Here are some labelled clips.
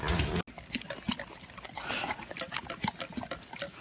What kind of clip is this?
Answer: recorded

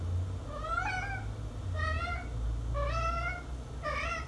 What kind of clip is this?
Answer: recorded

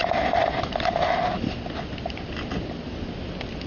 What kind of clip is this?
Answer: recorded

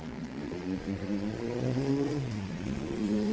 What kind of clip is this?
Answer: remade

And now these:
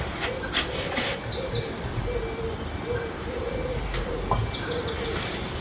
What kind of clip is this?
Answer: recorded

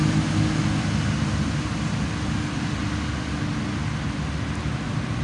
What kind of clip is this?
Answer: recorded